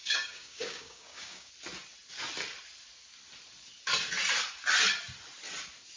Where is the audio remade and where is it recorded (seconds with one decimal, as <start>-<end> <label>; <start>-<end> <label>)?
0.0-1.5 remade; 1.5-6.0 recorded